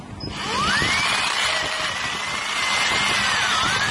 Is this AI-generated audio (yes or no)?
no